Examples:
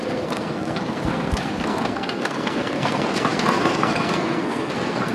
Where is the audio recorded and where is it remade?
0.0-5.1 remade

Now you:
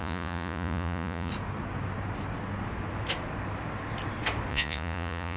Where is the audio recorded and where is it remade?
0.0-1.3 remade; 1.3-4.5 recorded; 4.5-5.4 remade

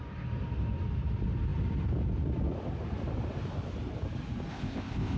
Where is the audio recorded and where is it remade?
0.0-4.5 recorded; 4.5-5.2 remade

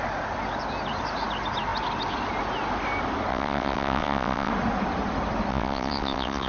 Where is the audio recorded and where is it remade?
0.0-3.3 recorded; 3.3-4.5 remade; 4.5-5.5 recorded; 5.5-6.5 remade

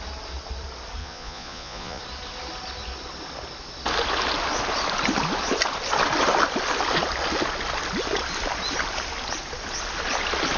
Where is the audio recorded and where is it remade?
0.0-1.0 recorded; 1.0-2.0 remade; 2.0-10.6 recorded

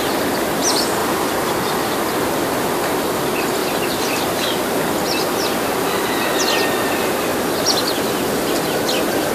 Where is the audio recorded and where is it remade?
0.0-1.0 recorded; 1.0-1.5 remade; 1.5-3.6 recorded; 3.6-4.8 remade; 4.8-7.3 recorded; 7.3-9.3 remade

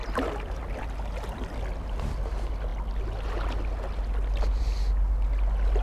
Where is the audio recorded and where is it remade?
0.0-5.8 recorded

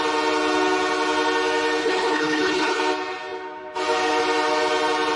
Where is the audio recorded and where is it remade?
0.0-1.8 recorded; 1.8-2.8 remade; 2.8-5.2 recorded